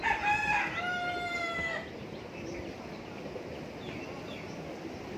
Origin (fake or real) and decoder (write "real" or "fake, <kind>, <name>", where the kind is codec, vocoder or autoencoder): real